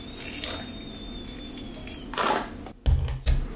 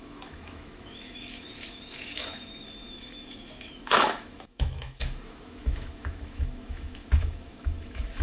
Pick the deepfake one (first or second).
second